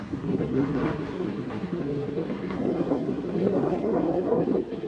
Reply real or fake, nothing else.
fake